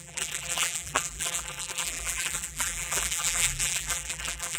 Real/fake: fake